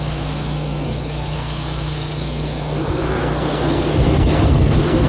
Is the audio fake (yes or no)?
yes